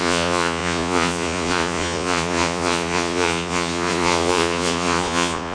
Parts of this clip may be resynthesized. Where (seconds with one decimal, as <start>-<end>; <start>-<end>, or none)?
0.0-5.5